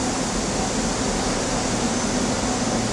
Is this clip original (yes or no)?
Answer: yes